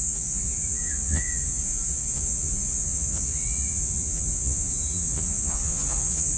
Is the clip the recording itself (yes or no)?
no